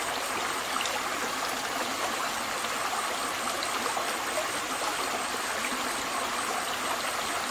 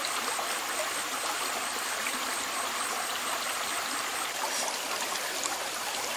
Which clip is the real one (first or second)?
first